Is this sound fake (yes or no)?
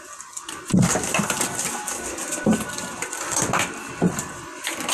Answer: no